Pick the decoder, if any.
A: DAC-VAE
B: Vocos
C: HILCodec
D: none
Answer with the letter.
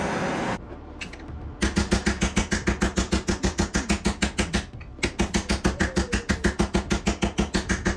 D